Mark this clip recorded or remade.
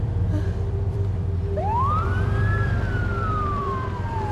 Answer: remade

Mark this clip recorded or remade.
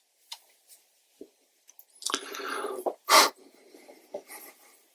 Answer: recorded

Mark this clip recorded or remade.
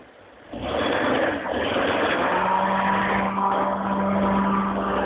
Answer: recorded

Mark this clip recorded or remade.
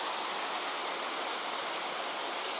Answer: recorded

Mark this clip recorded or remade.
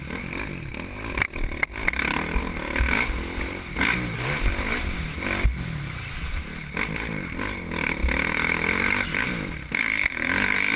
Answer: recorded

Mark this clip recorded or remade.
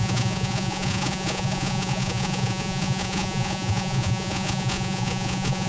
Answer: remade